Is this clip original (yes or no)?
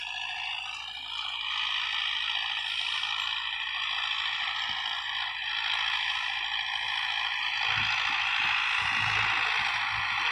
yes